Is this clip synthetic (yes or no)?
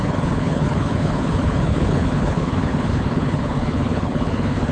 yes